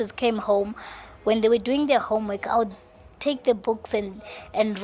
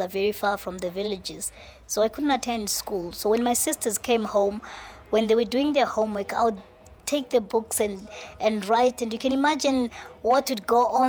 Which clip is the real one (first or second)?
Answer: first